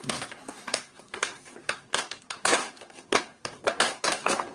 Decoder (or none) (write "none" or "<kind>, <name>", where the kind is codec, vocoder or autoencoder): codec, SNAC